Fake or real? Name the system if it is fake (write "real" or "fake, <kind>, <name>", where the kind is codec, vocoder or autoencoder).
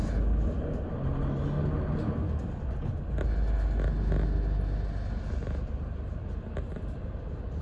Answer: real